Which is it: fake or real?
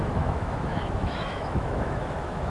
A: fake